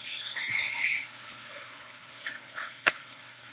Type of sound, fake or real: fake